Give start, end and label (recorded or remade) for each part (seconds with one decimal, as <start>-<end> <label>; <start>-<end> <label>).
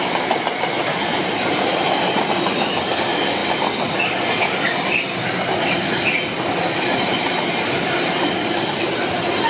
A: 0.0-1.1 recorded; 1.1-2.8 remade; 2.8-9.5 recorded